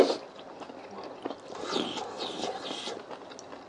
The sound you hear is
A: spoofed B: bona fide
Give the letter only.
B